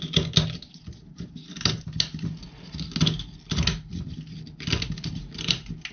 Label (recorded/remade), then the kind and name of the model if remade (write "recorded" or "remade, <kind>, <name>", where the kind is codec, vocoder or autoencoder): recorded